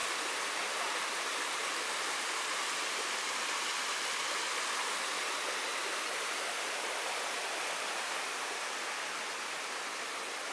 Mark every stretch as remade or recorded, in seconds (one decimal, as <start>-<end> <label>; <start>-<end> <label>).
0.0-2.6 remade; 2.6-10.5 recorded